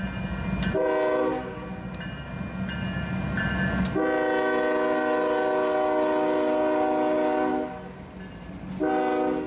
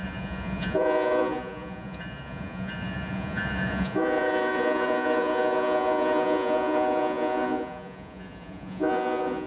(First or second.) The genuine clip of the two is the first